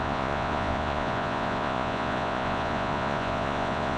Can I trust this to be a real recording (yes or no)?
no